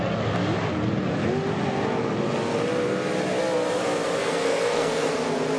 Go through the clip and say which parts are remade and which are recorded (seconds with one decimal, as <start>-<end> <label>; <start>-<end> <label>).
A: 0.0-4.2 recorded; 4.2-5.1 remade; 5.1-5.6 recorded